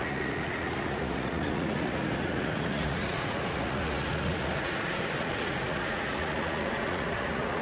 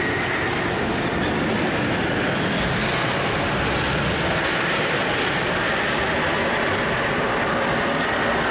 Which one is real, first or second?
second